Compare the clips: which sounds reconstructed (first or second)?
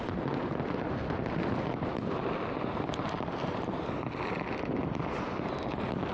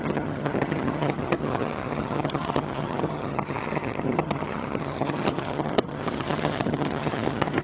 second